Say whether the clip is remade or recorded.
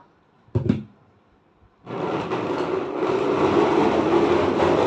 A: recorded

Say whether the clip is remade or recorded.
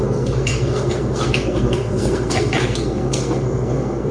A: remade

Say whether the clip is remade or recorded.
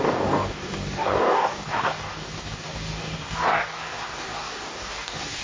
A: remade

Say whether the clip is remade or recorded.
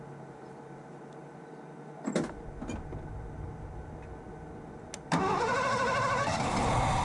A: recorded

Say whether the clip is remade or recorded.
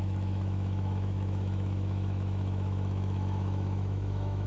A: remade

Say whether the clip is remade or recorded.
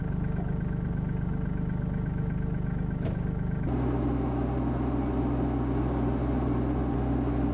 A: recorded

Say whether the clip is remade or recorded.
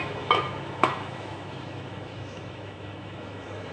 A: remade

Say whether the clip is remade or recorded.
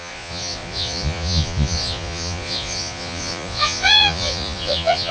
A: remade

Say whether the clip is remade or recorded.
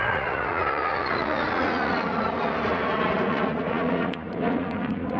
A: remade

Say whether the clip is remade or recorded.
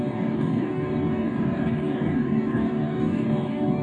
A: remade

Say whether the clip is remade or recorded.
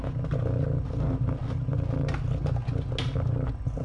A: recorded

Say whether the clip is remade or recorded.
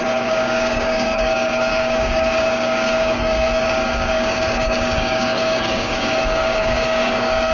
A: remade